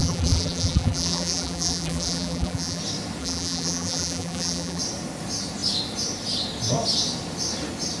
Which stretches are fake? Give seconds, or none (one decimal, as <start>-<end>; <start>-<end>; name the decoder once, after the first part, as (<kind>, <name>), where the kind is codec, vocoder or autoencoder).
0.0-2.8 (vocoder, BigVGAN v2); 3.2-4.8